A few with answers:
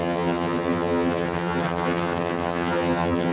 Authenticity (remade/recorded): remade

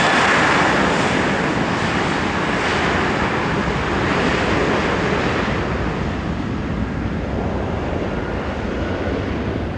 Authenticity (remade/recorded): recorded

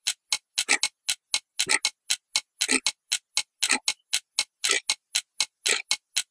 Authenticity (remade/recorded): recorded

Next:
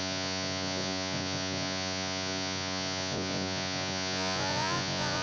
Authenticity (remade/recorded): remade